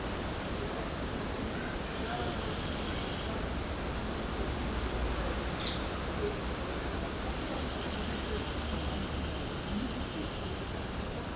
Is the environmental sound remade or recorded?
recorded